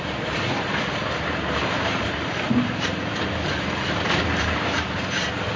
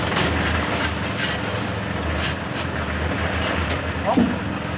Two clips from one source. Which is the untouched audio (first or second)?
second